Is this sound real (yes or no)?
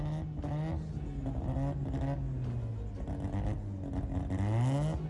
yes